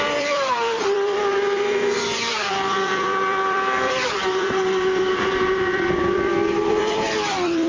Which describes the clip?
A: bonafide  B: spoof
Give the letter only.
B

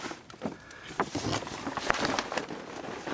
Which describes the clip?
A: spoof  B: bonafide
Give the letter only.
B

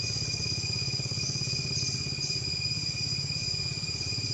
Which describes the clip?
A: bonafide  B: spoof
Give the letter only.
A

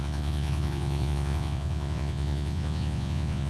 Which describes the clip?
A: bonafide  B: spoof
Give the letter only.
B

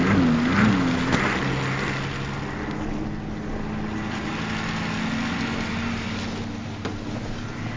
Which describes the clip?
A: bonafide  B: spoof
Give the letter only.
A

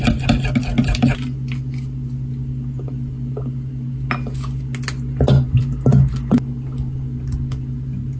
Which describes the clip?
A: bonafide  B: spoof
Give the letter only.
A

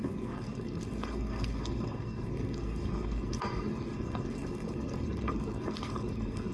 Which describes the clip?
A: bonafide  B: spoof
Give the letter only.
B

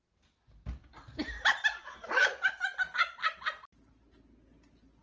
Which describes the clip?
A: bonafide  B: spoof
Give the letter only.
A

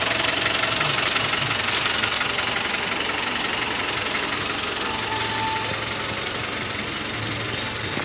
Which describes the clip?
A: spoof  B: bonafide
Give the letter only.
B